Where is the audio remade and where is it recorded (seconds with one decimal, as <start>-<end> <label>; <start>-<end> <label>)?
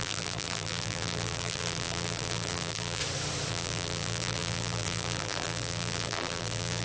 0.0-3.0 remade; 3.0-3.5 recorded; 3.5-6.8 remade